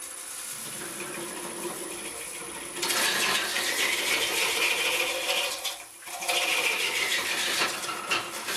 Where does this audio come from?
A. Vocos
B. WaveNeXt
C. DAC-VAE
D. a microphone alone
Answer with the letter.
D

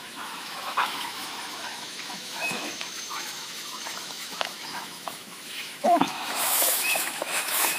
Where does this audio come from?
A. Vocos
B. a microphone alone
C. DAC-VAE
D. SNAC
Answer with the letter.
C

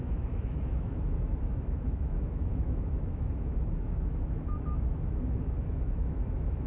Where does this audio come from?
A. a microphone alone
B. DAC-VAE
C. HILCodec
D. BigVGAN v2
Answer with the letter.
B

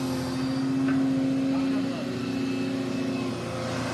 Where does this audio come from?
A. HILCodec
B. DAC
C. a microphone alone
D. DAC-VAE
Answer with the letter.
C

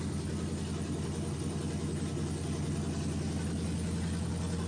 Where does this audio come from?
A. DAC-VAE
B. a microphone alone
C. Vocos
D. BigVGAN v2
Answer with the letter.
B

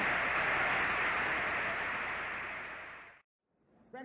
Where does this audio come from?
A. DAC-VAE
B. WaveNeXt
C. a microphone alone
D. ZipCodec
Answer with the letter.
C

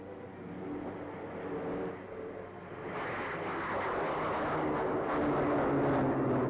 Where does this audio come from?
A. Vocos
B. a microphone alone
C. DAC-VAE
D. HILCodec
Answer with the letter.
B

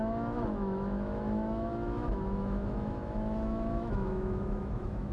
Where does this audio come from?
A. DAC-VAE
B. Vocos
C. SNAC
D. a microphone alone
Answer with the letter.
A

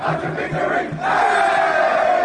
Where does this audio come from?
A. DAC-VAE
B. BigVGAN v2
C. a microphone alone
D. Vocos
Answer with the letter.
C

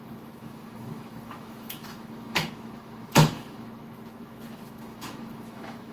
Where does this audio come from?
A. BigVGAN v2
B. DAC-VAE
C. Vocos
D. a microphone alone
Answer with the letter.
B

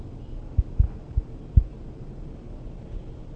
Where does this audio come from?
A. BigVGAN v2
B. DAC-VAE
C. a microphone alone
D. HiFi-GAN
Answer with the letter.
C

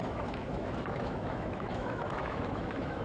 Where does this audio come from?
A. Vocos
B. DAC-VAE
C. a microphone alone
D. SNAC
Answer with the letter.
B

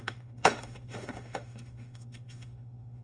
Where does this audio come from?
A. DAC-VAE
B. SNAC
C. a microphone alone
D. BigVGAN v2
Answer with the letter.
A